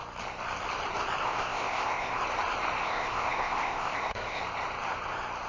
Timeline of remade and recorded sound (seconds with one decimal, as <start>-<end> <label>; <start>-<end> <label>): 0.0-1.2 recorded; 1.2-2.2 remade; 2.2-2.8 recorded; 2.8-4.4 remade; 4.4-5.5 recorded